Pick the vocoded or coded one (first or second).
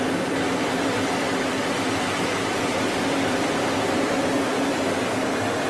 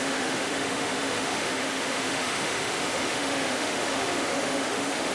second